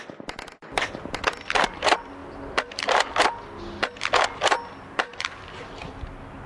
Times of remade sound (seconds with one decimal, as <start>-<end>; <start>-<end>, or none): 0.0-6.5